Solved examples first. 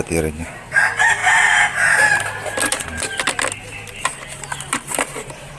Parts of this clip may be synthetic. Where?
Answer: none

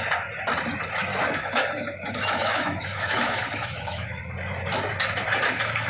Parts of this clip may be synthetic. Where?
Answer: 1.1-4.2 (autoencoder, DAC-VAE)